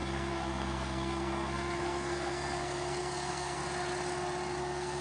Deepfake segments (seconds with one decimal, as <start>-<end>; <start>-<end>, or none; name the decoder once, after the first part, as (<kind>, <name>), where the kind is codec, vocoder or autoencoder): 0.0-3.6 (codec, SNAC); 4.6-5.0